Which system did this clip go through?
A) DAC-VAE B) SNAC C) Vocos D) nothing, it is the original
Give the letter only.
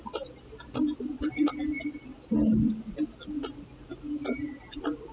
D